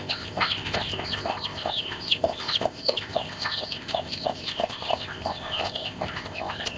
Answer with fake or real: fake